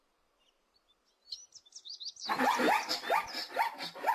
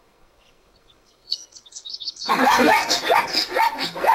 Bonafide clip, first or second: first